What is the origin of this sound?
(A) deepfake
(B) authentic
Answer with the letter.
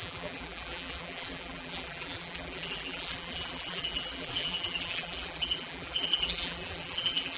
A